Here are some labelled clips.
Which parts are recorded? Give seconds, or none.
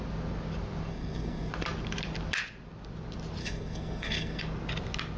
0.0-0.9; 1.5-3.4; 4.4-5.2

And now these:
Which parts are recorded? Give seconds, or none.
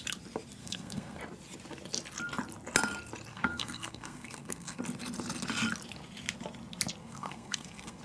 0.0-0.6; 1.2-3.3; 4.8-7.0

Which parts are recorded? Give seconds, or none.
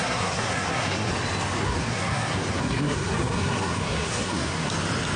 1.1-1.6; 4.7-5.2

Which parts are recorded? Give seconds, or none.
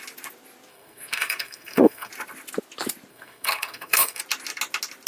0.0-0.7; 2.1-3.1; 4.2-5.1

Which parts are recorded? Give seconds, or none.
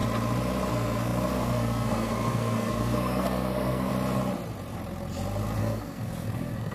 0.0-0.7; 3.9-5.6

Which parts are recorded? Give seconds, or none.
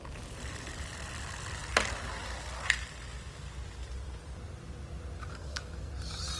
0.0-5.3; 5.9-6.4